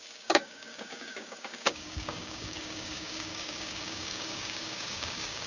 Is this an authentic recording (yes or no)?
no